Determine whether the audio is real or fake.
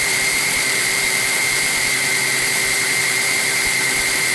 fake